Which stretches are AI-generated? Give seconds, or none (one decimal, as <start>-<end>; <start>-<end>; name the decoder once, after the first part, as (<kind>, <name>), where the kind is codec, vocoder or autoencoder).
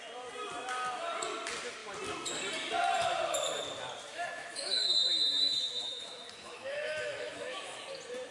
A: 4.1-7.8 (autoencoder, DAC-VAE)